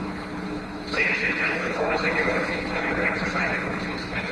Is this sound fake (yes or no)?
yes